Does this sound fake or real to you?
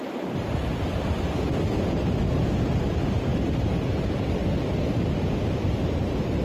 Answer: real